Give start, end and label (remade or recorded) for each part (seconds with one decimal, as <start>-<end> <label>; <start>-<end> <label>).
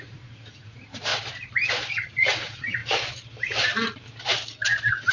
0.0-1.1 remade; 1.1-1.9 recorded; 1.9-2.8 remade; 2.8-5.1 recorded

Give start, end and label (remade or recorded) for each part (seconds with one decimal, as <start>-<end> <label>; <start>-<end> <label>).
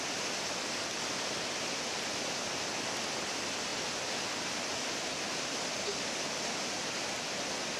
0.0-7.8 recorded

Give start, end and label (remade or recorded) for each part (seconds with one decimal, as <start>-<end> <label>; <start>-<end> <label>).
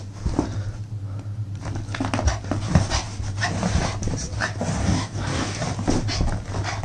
0.0-4.8 recorded; 4.8-5.6 remade; 5.6-6.8 recorded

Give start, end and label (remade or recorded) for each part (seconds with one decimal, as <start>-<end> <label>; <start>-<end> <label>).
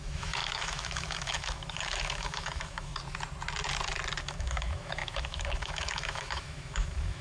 0.0-2.9 remade; 2.9-4.2 recorded; 4.2-7.2 remade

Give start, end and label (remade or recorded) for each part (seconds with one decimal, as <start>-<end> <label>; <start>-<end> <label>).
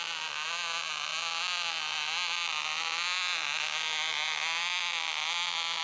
0.0-5.8 recorded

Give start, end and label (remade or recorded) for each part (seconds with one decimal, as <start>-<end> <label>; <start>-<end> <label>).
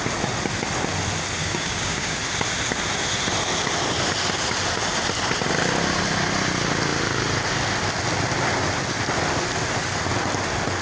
0.0-1.4 recorded; 1.4-2.2 remade; 2.2-10.8 recorded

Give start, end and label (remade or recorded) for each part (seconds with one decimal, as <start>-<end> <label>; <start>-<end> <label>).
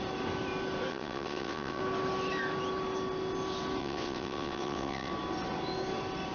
0.0-0.9 recorded; 0.9-1.8 remade; 1.8-3.8 recorded; 3.8-5.1 remade; 5.1-6.3 recorded